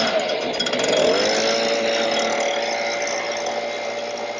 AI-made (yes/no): no